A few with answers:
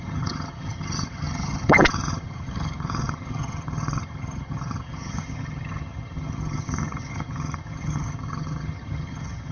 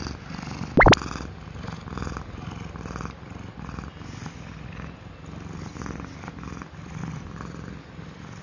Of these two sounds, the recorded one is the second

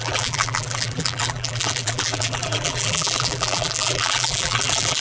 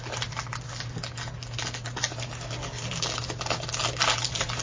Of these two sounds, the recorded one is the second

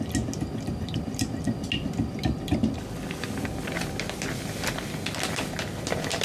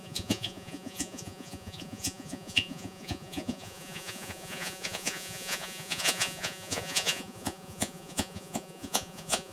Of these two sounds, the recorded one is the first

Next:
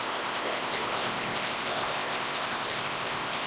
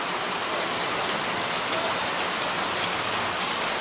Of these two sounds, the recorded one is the second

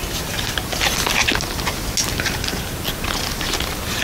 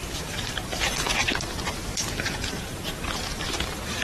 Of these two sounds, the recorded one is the first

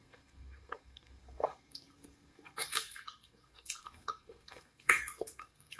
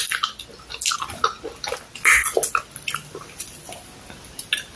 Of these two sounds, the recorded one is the second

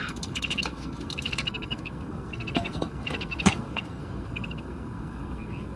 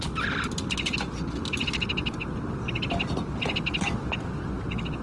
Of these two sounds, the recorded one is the second